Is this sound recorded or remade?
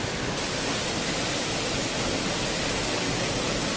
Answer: recorded